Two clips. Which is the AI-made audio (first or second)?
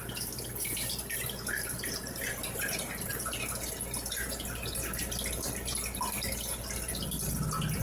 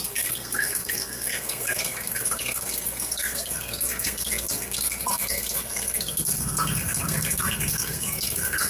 second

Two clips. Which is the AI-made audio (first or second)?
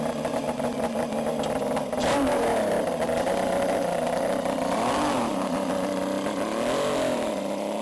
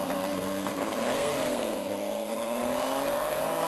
second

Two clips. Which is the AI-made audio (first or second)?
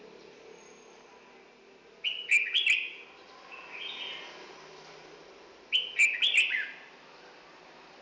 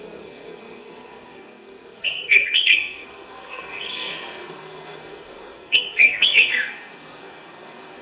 second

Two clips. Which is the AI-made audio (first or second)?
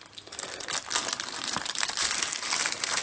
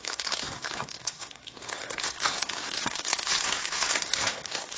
second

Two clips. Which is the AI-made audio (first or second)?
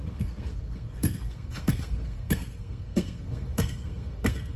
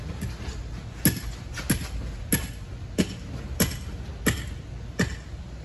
first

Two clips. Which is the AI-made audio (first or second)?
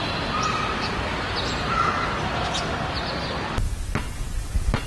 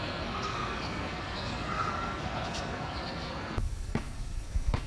second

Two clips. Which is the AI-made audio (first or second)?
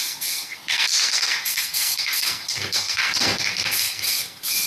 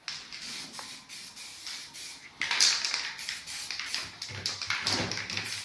first